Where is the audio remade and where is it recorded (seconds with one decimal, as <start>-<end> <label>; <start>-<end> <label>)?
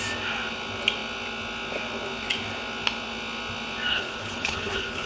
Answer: 0.0-3.9 recorded; 3.9-5.1 remade